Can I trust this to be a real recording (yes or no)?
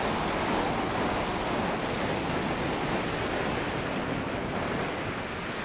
yes